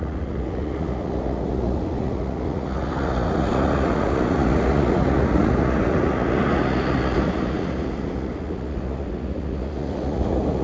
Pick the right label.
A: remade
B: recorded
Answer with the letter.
A